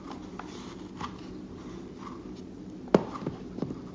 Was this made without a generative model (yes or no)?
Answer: yes